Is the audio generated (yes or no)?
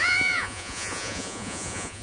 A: yes